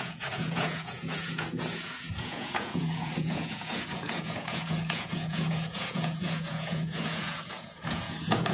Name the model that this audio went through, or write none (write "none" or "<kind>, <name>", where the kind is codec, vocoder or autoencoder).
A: vocoder, Vocos